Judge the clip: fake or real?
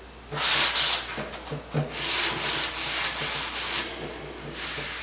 real